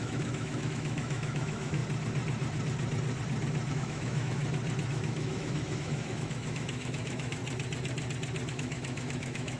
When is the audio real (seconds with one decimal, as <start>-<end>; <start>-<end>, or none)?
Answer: 1.8-3.7; 4.4-4.9; 7.4-8.5